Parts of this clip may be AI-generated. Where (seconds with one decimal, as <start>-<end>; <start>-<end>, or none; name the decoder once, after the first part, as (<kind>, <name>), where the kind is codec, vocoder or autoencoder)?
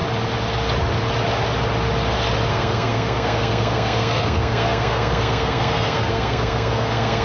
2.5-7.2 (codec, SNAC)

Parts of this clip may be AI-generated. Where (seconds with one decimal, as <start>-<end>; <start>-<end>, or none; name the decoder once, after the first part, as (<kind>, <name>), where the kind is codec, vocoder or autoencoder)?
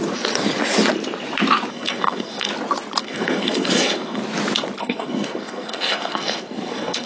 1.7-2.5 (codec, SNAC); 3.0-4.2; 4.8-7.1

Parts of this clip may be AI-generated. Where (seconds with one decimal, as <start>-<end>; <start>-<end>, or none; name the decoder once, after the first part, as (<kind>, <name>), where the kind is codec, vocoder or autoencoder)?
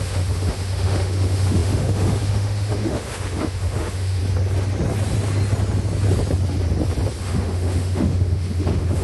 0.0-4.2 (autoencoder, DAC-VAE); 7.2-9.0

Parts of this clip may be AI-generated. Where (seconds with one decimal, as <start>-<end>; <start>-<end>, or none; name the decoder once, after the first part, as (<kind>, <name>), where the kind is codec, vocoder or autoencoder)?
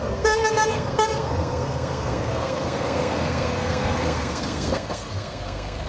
0.0-5.9 (codec, SNAC)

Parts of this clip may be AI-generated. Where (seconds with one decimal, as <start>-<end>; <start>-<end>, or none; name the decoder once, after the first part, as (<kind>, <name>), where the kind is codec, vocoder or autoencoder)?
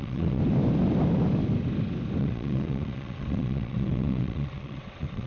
0.0-0.4 (vocoder, WaveNeXt); 2.2-5.3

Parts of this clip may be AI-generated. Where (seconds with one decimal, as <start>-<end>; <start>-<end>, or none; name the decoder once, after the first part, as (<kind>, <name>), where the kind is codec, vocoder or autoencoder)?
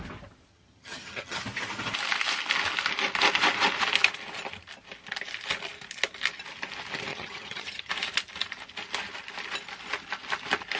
0.5-1.4 (vocoder, HiFi-GAN); 7.1-7.9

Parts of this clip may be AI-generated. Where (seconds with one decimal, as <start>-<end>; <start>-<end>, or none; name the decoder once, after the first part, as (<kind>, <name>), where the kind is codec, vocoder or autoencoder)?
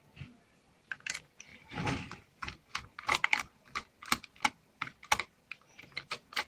none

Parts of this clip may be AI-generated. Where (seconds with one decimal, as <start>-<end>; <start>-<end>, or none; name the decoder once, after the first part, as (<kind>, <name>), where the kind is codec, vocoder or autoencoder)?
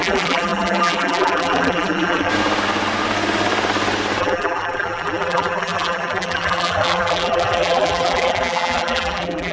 0.0-2.3 (vocoder, BigVGAN v2); 4.2-9.5